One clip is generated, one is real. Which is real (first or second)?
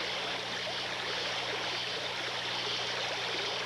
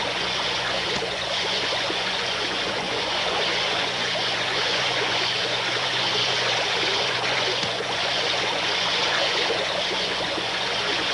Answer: first